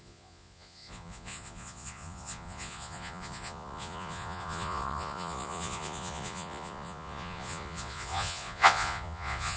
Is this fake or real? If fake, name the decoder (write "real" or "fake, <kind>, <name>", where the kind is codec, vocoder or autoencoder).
fake, vocoder, Vocos